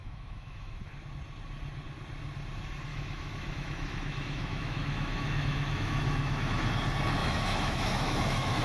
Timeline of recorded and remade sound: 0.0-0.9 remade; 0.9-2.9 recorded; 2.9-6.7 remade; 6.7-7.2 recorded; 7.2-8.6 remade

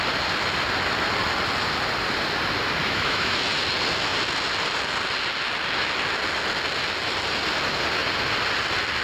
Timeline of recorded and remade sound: 0.0-2.8 recorded; 2.8-3.4 remade; 3.4-9.0 recorded

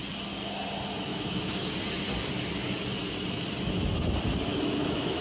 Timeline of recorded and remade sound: 0.0-1.1 recorded; 1.1-1.7 remade; 1.7-4.5 recorded; 4.5-5.2 remade

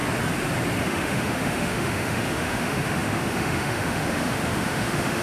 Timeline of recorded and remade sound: 0.0-0.8 recorded; 0.8-5.2 remade

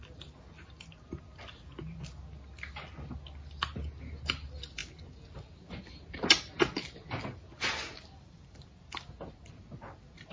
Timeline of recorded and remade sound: 0.0-10.3 recorded

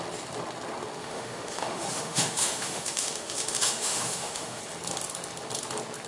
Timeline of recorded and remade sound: 0.0-1.0 recorded; 1.0-4.6 remade; 4.6-6.1 recorded

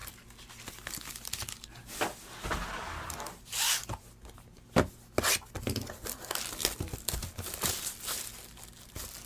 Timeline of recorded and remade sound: 0.0-9.3 recorded